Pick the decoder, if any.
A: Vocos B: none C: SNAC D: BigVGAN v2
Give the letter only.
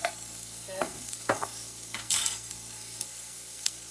C